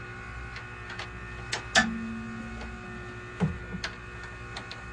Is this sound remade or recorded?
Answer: recorded